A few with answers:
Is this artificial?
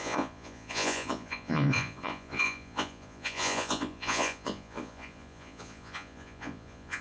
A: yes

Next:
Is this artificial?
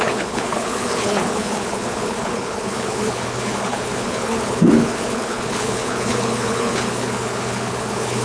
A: yes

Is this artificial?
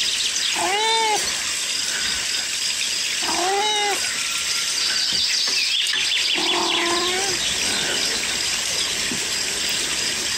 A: no